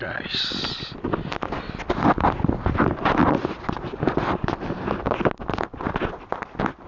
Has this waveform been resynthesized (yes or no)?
no